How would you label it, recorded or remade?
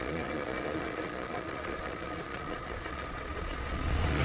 remade